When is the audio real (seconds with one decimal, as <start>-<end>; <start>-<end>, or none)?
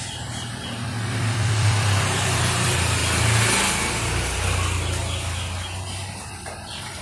3.0-6.3